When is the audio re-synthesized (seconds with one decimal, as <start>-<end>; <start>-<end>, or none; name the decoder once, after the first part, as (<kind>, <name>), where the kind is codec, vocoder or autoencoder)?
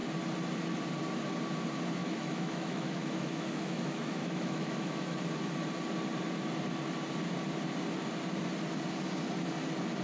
2.0-5.2 (autoencoder, DAC-VAE)